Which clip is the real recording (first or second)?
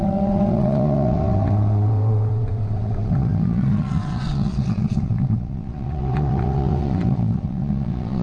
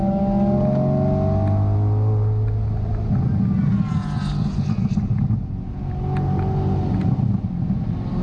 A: second